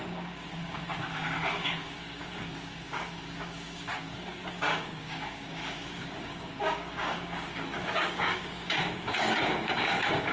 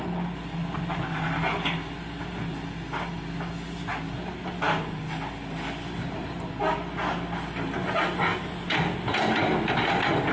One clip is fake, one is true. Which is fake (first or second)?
first